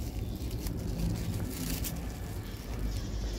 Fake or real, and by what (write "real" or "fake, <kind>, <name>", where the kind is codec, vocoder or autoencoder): real